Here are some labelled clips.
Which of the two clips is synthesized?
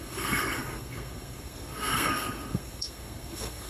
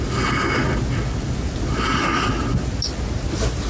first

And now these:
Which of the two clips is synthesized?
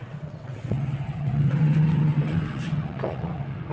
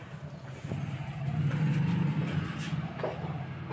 first